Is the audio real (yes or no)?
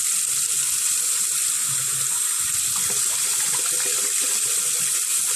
yes